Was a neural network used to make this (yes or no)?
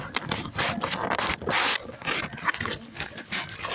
no